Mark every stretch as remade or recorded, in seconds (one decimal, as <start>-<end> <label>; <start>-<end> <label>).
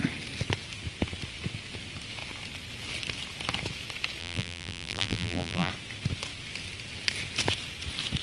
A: 0.0-4.2 recorded; 4.2-5.7 remade; 5.7-8.2 recorded